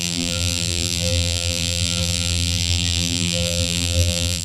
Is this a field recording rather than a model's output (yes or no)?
no